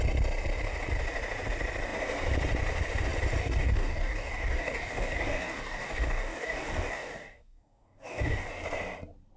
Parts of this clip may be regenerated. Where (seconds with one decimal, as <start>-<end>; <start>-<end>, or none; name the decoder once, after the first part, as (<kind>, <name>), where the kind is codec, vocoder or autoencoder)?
3.4-8.5 (codec, DAC)

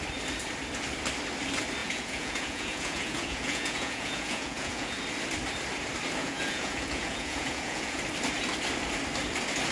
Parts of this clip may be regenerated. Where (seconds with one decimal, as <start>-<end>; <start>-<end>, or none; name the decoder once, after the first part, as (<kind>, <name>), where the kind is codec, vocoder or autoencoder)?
1.8-5.0 (vocoder, Vocos); 6.2-8.0

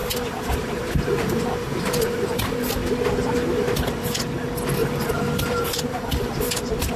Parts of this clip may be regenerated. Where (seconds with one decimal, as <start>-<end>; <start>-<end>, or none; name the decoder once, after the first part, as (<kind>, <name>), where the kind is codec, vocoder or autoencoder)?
0.0-2.7 (vocoder, BigVGAN v2); 4.8-6.4

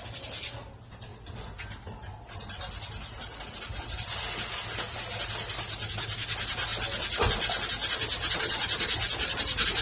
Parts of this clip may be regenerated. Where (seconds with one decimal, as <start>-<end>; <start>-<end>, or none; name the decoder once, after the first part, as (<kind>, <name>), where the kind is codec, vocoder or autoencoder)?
none

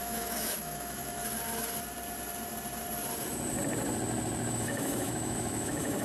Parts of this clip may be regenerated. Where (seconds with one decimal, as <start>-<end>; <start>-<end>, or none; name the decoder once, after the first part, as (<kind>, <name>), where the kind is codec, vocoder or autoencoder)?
0.0-1.2 (autoencoder, DAC-VAE); 4.5-6.0